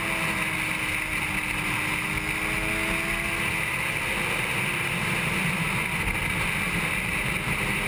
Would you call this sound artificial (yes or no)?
no